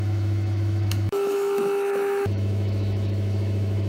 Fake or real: fake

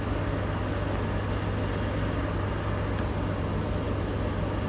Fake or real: real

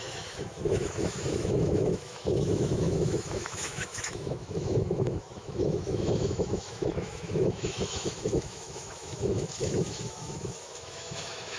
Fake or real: fake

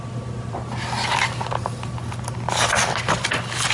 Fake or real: real